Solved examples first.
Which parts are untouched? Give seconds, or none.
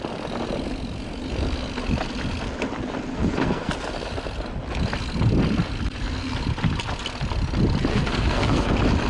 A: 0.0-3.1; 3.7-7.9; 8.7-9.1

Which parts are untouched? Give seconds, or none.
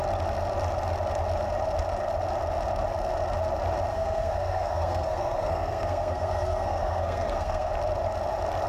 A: 0.0-3.9; 7.7-8.7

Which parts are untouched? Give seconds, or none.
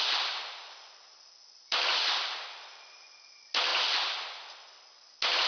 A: 0.0-5.5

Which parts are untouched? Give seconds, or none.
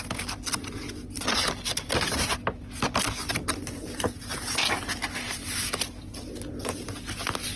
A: 0.0-7.6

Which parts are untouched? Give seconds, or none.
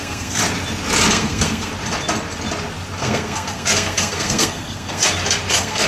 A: 0.4-1.1; 1.7-3.0; 5.0-5.5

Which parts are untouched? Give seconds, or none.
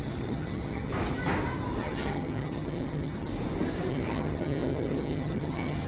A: 0.9-1.8; 3.3-3.9